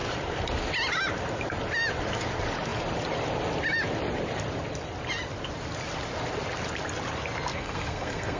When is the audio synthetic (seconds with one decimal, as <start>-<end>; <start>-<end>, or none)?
7.5-8.4